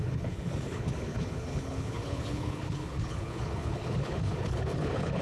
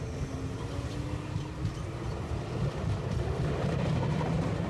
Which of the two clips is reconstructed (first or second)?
first